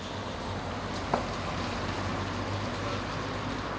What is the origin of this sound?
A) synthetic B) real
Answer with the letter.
B